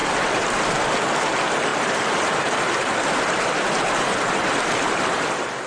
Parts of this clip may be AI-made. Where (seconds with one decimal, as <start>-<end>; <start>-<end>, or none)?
0.0-0.6; 1.7-5.1